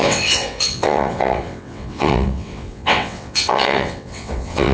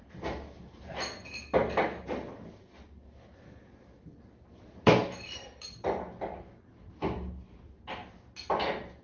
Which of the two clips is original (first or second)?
second